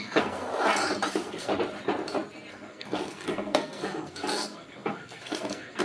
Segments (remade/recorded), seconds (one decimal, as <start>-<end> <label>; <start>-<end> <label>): 0.0-0.5 remade; 0.5-1.1 recorded; 1.1-1.5 remade; 1.5-2.5 recorded; 2.5-5.8 remade